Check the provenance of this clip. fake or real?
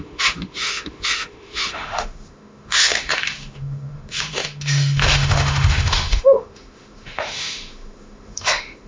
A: fake